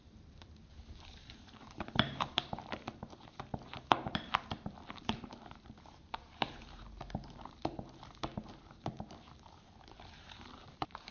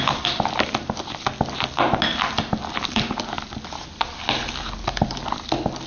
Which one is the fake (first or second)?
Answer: first